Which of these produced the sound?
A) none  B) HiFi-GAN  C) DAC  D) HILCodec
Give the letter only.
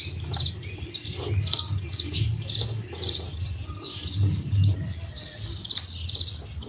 A